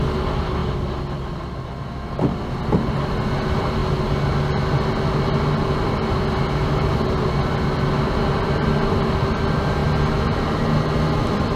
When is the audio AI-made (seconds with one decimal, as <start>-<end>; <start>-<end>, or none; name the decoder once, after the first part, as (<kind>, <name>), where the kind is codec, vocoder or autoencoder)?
none

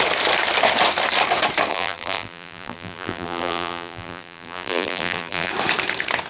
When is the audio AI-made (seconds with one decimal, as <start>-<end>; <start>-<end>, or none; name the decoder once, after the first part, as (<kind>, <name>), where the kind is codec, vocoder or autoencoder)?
1.7-5.5 (vocoder, BigVGAN v2)

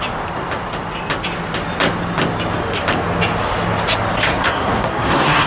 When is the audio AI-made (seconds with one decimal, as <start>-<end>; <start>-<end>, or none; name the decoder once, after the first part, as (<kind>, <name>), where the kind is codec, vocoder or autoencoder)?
4.3-5.5 (codec, SNAC)

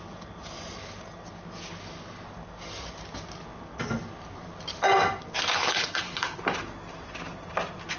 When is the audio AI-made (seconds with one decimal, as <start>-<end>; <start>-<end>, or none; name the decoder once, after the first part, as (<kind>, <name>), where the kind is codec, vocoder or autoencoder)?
5.6-6.4 (codec, HILCodec)

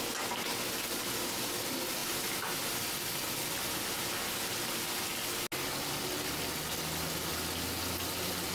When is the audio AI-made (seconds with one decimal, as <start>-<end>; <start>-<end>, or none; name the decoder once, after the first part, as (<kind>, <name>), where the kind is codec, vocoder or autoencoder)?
none

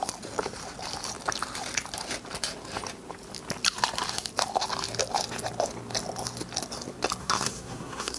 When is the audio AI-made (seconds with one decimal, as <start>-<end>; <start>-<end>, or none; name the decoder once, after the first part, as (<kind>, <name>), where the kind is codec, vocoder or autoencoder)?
7.2-8.2 (codec, SNAC)

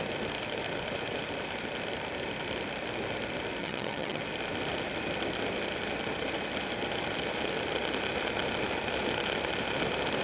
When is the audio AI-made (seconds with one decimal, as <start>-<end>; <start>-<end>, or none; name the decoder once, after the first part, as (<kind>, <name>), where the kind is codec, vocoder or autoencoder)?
3.6-4.2 (vocoder, HiFi-GAN)

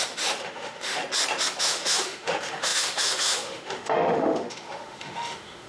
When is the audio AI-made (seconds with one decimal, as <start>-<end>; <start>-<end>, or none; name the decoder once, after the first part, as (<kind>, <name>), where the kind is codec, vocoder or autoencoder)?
0.0-1.0 (autoencoder, DAC-VAE); 1.6-5.7